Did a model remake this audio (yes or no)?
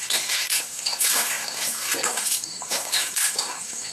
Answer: yes